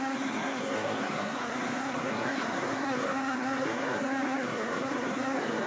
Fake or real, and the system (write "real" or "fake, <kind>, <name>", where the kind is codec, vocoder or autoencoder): fake, codec, SNAC